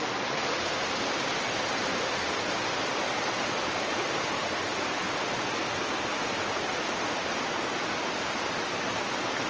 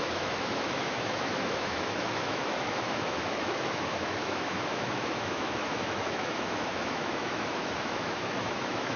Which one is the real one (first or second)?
first